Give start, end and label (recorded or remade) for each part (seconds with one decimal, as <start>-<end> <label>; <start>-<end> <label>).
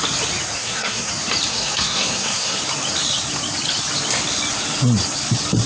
0.0-0.6 recorded; 0.6-1.1 remade; 1.1-1.5 recorded; 1.5-2.6 remade; 2.6-5.7 recorded